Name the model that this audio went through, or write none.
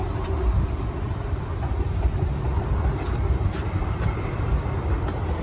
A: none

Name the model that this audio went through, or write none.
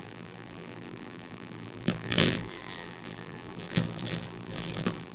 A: vocoder, BigVGAN v2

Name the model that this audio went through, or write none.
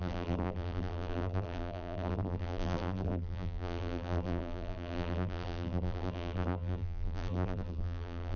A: vocoder, BigVGAN v2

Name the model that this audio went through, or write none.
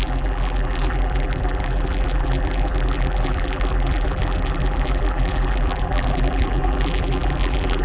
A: vocoder, BigVGAN v2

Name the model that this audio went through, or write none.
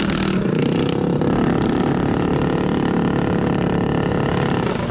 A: none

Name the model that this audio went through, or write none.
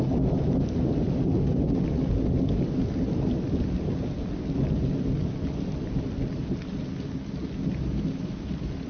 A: none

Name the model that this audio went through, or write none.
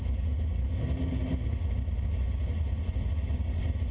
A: none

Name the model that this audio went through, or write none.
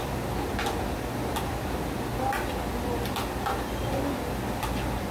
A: none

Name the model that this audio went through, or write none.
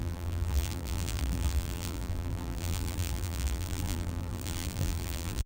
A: vocoder, BigVGAN v2